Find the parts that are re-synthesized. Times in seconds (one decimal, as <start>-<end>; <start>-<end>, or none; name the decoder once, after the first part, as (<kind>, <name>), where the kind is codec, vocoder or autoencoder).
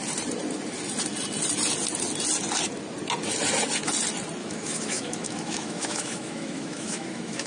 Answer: 4.4-7.5 (autoencoder, DAC-VAE)